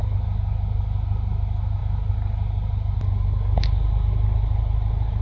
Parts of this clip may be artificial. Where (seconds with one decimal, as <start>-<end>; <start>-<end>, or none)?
none